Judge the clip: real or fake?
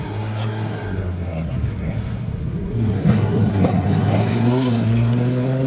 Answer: fake